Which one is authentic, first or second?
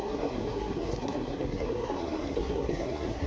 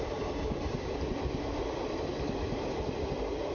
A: second